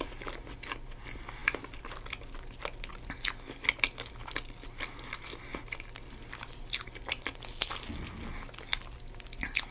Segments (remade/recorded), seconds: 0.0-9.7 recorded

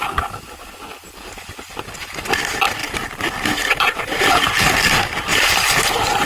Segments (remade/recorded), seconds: 0.0-2.8 recorded; 2.8-4.5 remade; 4.5-5.3 recorded; 5.3-6.3 remade

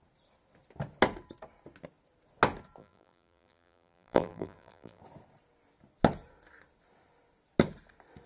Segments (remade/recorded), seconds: 0.0-2.8 recorded; 2.8-5.0 remade; 5.0-8.3 recorded